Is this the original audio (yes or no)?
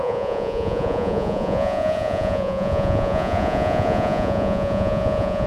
no